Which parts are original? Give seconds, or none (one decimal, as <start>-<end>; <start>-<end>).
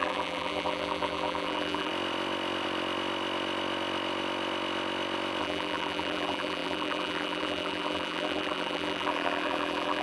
1.9-5.4